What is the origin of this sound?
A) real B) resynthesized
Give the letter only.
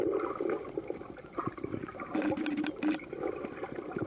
B